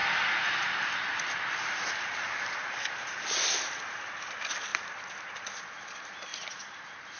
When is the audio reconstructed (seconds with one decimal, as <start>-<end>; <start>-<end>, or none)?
4.7-5.2; 6.3-6.8